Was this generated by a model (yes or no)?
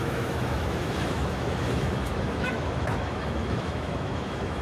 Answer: yes